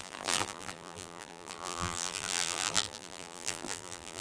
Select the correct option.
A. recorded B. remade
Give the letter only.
B